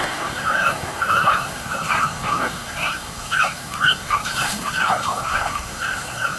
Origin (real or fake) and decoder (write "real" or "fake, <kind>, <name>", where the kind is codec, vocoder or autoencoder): fake, codec, SNAC